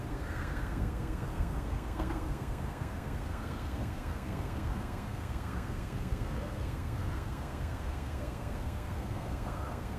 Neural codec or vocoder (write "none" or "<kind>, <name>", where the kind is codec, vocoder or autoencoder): codec, SNAC